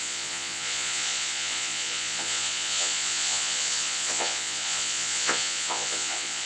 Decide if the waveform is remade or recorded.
remade